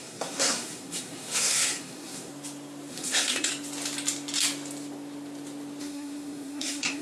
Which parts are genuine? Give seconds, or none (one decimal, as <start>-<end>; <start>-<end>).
2.3-2.9; 3.5-5.8